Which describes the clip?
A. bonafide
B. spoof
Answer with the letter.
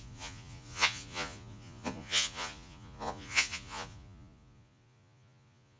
B